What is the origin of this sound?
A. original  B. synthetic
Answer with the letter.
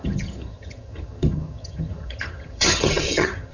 B